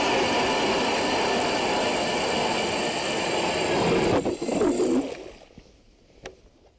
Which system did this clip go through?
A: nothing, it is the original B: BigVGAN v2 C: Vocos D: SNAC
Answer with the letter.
A